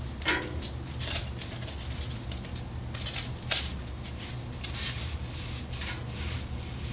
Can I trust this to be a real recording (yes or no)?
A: yes